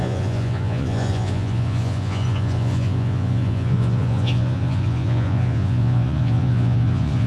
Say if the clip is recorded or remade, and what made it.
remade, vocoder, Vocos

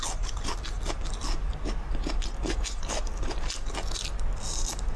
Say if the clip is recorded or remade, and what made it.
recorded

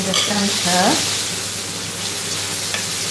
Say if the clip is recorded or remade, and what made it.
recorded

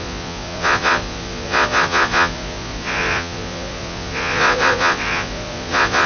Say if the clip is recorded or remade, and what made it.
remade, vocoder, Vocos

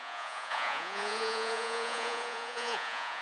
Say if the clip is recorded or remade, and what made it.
remade, vocoder, Vocos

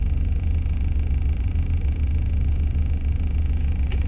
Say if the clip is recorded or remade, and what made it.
remade, vocoder, Vocos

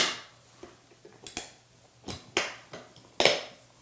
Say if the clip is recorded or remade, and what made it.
recorded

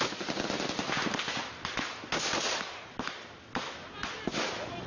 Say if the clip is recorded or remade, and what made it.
recorded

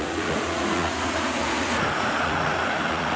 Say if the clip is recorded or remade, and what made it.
remade, vocoder, Vocos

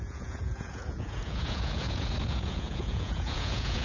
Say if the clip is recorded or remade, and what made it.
remade, vocoder, Vocos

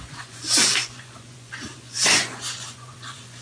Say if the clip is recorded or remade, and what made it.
remade, vocoder, Vocos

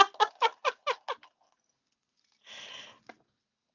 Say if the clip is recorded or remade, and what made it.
recorded